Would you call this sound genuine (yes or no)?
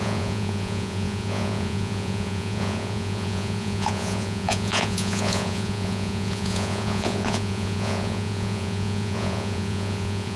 no